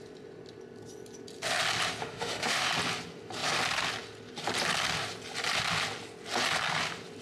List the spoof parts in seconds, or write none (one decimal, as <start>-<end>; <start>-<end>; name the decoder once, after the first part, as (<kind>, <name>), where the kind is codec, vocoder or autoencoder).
2.0-2.7 (autoencoder, DAC-VAE)